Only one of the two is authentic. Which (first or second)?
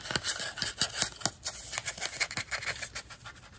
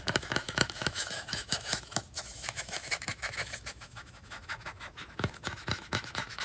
first